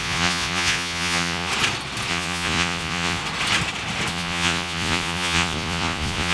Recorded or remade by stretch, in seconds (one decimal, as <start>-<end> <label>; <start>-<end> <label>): 0.0-1.5 remade; 1.5-2.1 recorded; 2.1-3.2 remade; 3.2-4.1 recorded; 4.1-6.3 remade